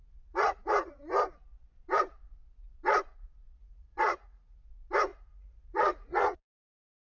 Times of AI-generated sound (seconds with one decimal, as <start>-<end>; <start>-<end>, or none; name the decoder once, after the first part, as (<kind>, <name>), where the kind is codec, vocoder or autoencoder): 0.0-1.0 (vocoder, Vocos); 3.6-4.6; 5.1-6.5